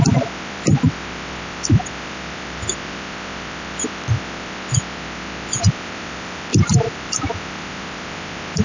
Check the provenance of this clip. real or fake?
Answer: real